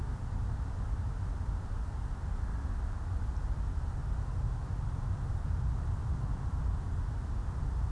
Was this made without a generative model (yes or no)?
yes